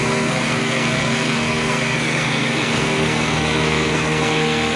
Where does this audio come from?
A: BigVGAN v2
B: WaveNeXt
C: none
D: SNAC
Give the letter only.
D